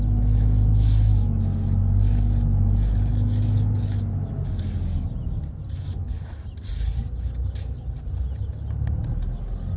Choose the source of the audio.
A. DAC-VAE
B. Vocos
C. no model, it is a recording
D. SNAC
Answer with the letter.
C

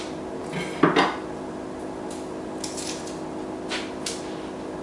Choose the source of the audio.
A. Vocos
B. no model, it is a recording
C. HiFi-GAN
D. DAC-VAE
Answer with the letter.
B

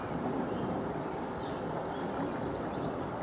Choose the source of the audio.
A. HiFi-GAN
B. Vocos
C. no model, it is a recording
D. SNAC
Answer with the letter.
C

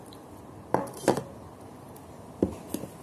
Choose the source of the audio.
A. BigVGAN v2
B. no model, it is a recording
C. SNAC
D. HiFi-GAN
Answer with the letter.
B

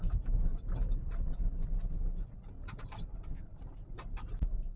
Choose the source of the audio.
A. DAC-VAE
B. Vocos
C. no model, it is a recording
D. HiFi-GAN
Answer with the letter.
C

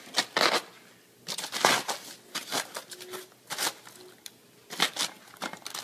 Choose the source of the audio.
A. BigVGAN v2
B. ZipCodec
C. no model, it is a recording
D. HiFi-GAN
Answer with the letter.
C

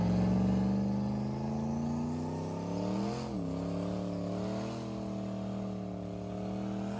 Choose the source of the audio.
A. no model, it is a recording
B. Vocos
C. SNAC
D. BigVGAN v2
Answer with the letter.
A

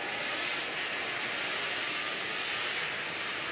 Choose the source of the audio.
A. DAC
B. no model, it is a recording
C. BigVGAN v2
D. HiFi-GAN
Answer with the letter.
B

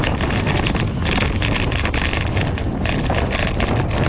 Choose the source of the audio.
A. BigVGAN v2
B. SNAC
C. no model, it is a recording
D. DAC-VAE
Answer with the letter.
C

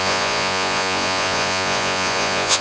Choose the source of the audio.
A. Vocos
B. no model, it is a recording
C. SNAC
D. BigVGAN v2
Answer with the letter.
A